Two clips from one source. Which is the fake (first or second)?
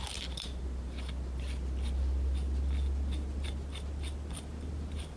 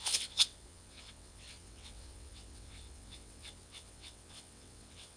second